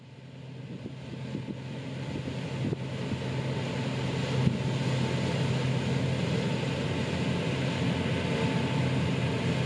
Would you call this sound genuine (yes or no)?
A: yes